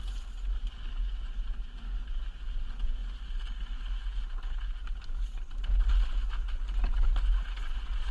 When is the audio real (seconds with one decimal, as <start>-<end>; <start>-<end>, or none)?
0.0-8.1